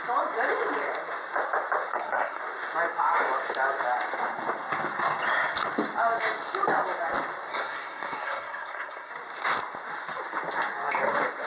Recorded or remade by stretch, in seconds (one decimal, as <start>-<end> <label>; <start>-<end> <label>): 0.0-1.9 recorded; 1.9-2.4 remade; 2.4-7.5 recorded; 7.5-9.1 remade; 9.1-11.5 recorded